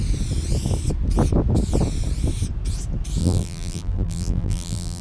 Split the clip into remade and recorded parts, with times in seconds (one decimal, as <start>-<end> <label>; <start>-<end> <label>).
0.0-3.2 recorded; 3.2-5.0 remade

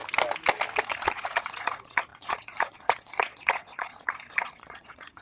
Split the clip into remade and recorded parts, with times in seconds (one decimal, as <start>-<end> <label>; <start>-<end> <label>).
0.0-0.8 recorded; 0.8-5.2 remade

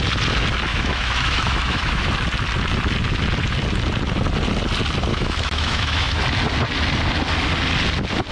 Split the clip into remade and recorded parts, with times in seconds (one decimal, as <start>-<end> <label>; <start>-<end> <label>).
0.0-0.7 recorded; 0.7-2.1 remade; 2.1-5.1 recorded; 5.1-6.2 remade; 6.2-8.3 recorded

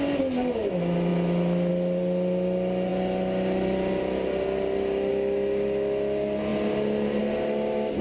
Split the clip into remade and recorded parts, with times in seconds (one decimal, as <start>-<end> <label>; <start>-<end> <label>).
0.0-8.0 recorded

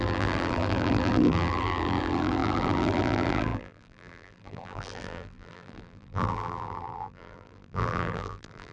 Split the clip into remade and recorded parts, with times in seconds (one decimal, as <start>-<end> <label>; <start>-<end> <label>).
0.0-8.7 remade

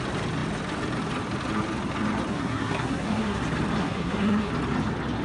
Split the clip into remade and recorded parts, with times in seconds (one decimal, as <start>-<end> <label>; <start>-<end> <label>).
0.0-2.3 recorded; 2.3-3.4 remade; 3.4-3.8 recorded; 3.8-4.5 remade; 4.5-5.2 recorded

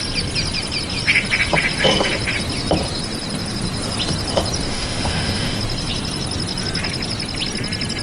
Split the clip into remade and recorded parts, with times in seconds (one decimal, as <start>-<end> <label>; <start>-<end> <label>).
0.0-4.7 recorded; 4.7-5.6 remade; 5.6-8.0 recorded

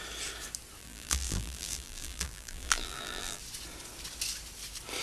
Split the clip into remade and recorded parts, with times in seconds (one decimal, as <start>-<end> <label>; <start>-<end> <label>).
0.0-0.8 recorded; 0.8-3.4 remade; 3.4-5.0 recorded